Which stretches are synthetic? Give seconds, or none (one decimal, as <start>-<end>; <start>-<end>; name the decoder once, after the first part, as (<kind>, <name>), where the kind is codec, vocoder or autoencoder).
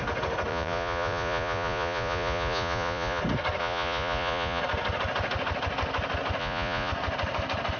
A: 0.5-3.2 (vocoder, Vocos); 3.6-4.6; 6.4-6.9